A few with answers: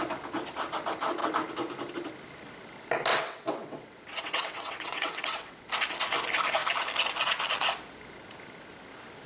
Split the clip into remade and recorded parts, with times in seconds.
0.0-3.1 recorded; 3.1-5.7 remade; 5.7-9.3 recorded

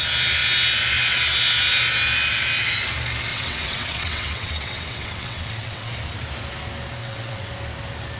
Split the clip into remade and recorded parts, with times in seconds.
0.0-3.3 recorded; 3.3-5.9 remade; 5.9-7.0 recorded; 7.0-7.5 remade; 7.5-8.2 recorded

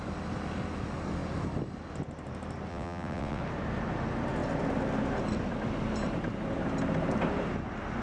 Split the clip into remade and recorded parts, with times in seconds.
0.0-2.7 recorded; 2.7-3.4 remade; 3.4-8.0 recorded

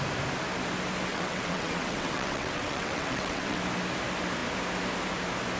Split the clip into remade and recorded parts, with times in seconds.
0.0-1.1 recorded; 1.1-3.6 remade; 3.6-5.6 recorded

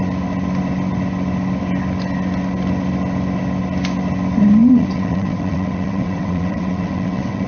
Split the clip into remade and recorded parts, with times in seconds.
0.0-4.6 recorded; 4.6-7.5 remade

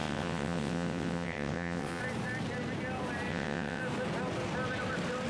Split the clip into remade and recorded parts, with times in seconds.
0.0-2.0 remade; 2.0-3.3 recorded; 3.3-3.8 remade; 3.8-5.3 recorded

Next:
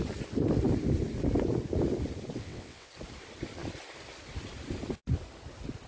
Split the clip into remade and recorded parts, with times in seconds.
0.0-2.4 recorded; 2.4-2.9 remade; 2.9-5.9 recorded

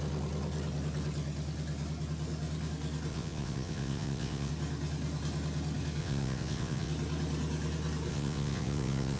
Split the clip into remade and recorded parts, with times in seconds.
0.0-3.1 recorded; 3.1-4.5 remade; 4.5-6.0 recorded; 6.0-6.9 remade; 6.9-8.1 recorded; 8.1-9.2 remade